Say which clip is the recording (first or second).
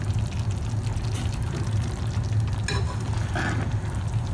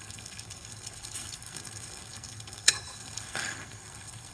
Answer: first